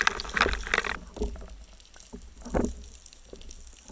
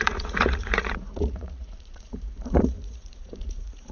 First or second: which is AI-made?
second